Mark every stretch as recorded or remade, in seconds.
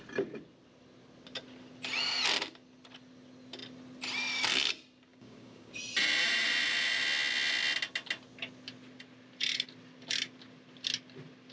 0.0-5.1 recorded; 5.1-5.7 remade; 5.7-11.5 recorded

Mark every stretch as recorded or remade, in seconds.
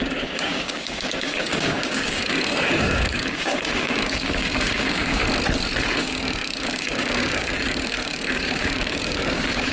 0.0-5.2 remade; 5.2-6.0 recorded; 6.0-9.7 remade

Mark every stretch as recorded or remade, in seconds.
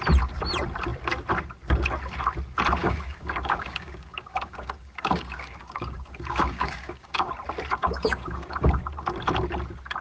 0.0-2.8 recorded; 2.8-7.3 remade; 7.3-7.8 recorded; 7.8-8.8 remade; 8.8-10.0 recorded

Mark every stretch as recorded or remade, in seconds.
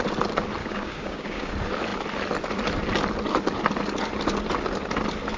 0.0-0.6 recorded; 0.6-1.5 remade; 1.5-5.4 recorded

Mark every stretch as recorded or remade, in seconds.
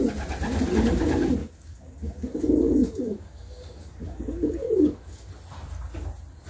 0.0-1.4 recorded; 1.4-5.3 remade; 5.3-6.5 recorded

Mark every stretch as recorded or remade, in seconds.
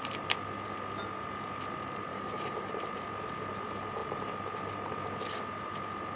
0.0-2.1 recorded; 2.1-2.7 remade; 2.7-6.2 recorded